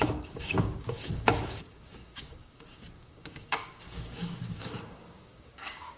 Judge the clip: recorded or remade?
remade